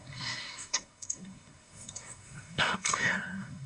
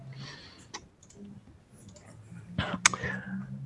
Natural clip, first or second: second